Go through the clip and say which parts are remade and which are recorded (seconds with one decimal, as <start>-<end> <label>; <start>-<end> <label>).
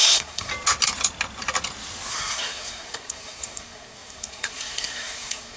0.0-0.5 remade; 0.5-2.1 recorded; 2.1-5.6 remade